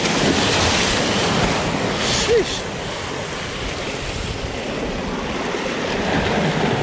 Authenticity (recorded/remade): recorded